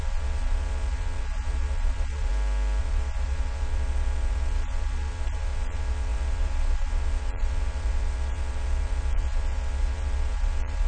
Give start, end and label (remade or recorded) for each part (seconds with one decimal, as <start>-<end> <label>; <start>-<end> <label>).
0.0-2.3 remade; 2.3-2.8 recorded; 2.8-10.9 remade